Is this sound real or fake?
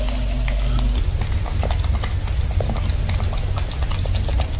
real